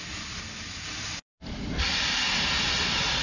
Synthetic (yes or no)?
no